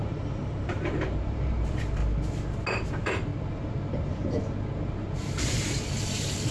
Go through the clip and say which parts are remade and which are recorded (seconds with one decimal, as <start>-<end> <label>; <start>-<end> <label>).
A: 0.0-2.0 remade; 2.0-2.9 recorded; 2.9-3.3 remade; 3.3-4.9 recorded; 4.9-6.5 remade